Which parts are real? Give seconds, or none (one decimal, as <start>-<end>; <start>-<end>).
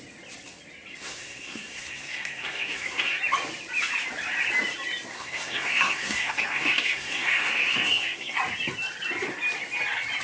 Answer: 0.0-0.9; 3.2-5.1; 8.4-10.2